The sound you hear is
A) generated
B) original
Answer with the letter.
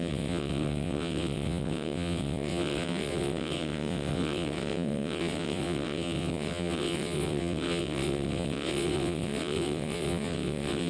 A